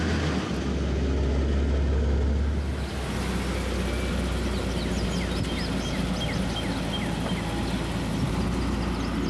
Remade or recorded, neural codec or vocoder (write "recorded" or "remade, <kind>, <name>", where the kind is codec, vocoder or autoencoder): recorded